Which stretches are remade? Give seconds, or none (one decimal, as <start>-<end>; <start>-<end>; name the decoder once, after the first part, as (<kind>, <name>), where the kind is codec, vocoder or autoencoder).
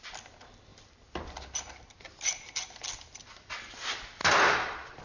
4.2-5.0 (vocoder, BigVGAN v2)